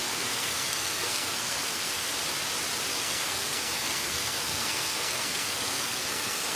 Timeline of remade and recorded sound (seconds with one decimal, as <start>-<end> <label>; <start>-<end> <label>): 0.0-2.1 remade; 2.1-2.9 recorded; 2.9-6.6 remade